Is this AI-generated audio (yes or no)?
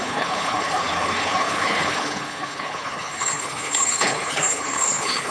yes